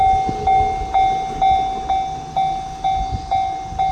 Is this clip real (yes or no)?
yes